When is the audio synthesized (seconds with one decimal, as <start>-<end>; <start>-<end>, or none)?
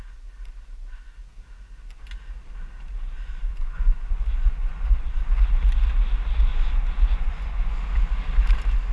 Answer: 3.5-5.2; 6.5-7.8